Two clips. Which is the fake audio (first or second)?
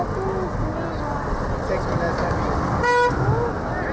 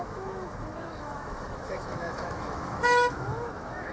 second